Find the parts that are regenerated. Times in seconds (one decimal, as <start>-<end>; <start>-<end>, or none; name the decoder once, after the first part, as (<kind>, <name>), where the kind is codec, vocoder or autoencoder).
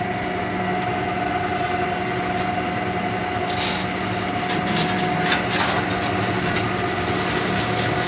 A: none